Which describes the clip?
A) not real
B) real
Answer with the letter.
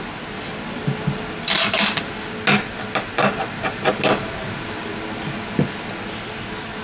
B